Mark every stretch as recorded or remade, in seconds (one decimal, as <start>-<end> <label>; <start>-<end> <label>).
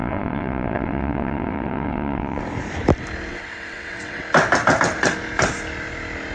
0.0-2.4 remade; 2.4-3.3 recorded; 3.3-4.2 remade; 4.2-6.3 recorded